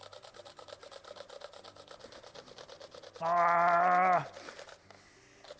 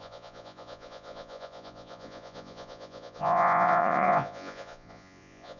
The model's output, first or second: second